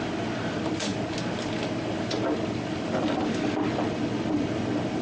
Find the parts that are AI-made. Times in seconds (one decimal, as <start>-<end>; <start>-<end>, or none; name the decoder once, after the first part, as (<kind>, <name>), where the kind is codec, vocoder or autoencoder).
none